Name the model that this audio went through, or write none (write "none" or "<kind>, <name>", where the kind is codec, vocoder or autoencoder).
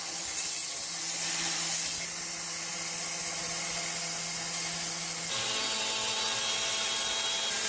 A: none